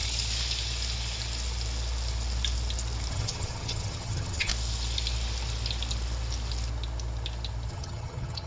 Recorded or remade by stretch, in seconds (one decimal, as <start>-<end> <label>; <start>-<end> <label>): 0.0-3.1 recorded; 3.1-4.5 remade; 4.5-7.7 recorded; 7.7-8.5 remade